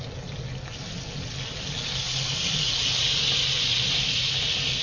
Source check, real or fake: real